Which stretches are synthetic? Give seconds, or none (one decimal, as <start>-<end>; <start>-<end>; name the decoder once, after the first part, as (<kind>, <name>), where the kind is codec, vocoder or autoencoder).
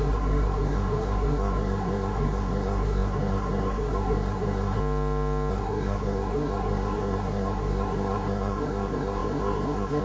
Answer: 0.0-4.8 (codec, SNAC); 5.5-10.0